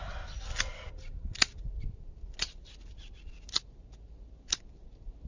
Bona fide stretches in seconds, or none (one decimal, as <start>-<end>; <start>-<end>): 0.0-5.3